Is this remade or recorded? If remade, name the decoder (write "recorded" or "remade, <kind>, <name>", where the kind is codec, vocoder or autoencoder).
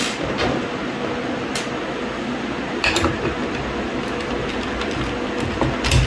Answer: recorded